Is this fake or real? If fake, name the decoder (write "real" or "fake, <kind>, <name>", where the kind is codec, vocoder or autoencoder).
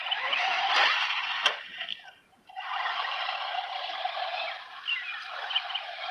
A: real